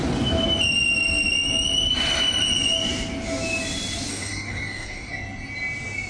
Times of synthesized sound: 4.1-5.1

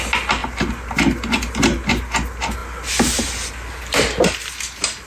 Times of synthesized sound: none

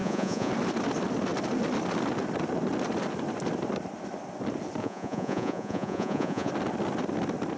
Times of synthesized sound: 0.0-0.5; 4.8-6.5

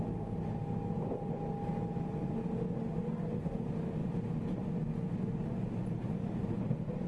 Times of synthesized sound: none

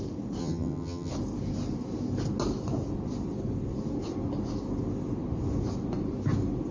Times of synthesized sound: 0.4-1.1

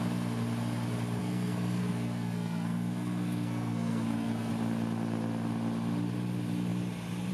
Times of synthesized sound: 1.2-4.5